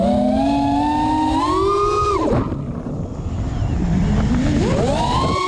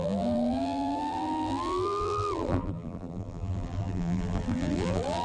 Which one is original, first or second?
first